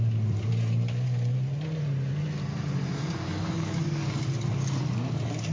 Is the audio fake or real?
real